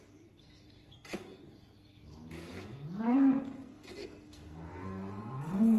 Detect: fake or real fake